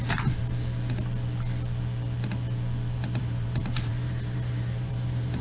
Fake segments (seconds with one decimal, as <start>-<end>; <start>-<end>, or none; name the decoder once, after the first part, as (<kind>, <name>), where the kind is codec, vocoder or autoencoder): 0.0-0.4 (vocoder, BigVGAN v2); 3.2-5.4